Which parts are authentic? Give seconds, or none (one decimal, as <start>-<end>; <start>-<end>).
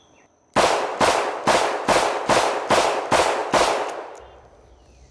0.0-5.1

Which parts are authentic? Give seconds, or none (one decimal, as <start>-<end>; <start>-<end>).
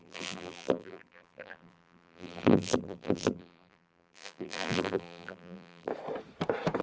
5.9-6.8